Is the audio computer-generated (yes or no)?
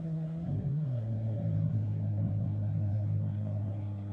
yes